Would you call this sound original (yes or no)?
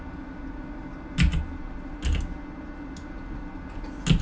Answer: yes